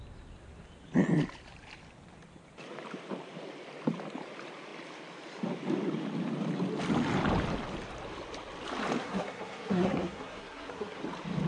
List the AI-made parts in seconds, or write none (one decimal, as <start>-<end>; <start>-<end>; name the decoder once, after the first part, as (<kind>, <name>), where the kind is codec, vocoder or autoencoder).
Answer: 9.0-11.0 (codec, SNAC)